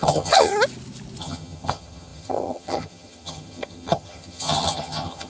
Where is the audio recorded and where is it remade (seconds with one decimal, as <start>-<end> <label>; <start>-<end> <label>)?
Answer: 0.0-0.5 remade; 0.5-1.2 recorded; 1.2-5.3 remade

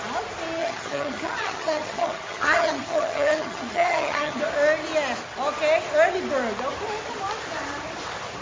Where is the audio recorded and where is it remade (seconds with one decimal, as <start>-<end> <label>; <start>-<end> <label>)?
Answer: 0.0-0.6 recorded; 0.6-4.4 remade; 4.4-8.4 recorded

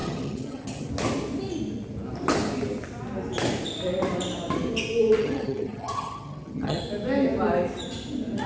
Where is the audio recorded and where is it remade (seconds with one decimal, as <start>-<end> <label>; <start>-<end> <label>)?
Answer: 0.0-0.9 remade; 0.9-5.2 recorded; 5.2-6.8 remade; 6.8-8.5 recorded

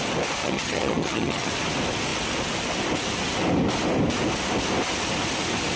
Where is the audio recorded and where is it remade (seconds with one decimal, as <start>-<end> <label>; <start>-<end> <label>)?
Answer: 0.0-0.4 recorded; 0.4-1.5 remade; 1.5-5.8 recorded

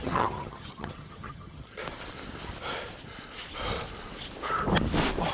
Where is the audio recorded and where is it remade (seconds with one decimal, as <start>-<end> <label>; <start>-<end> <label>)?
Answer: 0.0-1.8 remade; 1.8-5.3 recorded